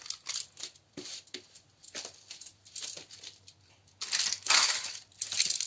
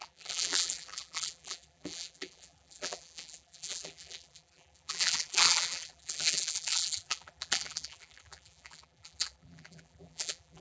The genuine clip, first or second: first